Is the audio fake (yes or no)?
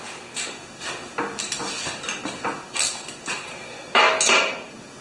no